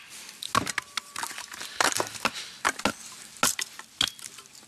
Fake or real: real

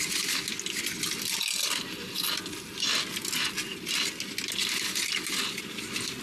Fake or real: real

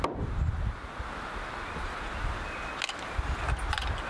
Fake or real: real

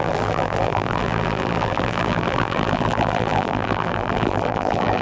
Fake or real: fake